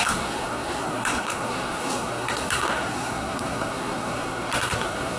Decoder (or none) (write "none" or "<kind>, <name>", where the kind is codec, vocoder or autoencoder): codec, SNAC